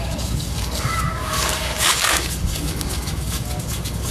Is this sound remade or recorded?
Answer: remade